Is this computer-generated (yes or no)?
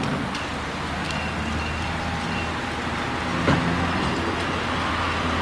no